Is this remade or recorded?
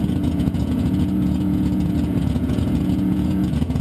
remade